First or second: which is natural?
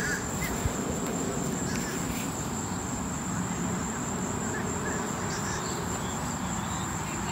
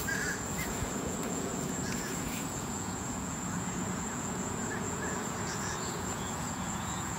first